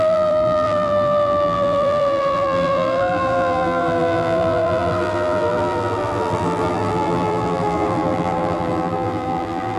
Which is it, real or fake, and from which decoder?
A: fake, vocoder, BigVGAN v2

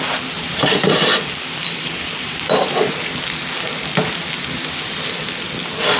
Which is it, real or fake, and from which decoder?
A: real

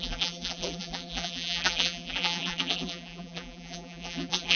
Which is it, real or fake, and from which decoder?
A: fake, vocoder, BigVGAN v2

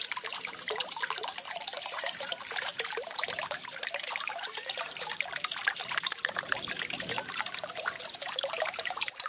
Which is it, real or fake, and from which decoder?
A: fake, vocoder, BigVGAN v2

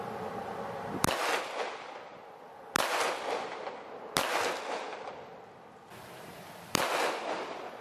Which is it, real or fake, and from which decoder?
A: real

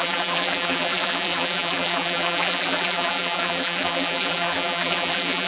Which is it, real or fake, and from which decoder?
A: fake, vocoder, BigVGAN v2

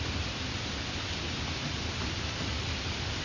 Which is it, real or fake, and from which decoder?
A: real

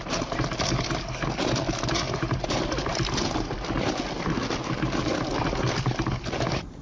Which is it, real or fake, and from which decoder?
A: real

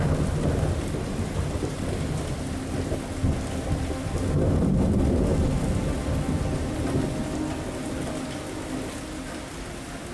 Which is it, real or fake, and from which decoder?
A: real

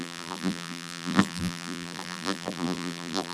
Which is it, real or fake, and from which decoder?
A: fake, vocoder, BigVGAN v2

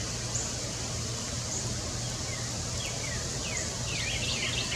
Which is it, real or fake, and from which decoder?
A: real